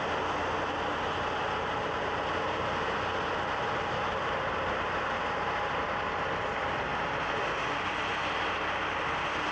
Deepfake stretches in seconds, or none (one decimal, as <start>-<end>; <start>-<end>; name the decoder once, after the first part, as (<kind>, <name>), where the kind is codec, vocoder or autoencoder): none